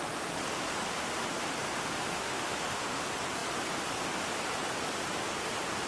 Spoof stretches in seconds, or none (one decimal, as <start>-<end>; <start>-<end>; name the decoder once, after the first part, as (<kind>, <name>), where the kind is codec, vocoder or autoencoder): 2.1-3.0 (autoencoder, DAC-VAE)